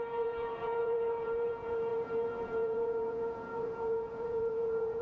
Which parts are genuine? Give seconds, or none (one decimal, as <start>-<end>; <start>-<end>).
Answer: none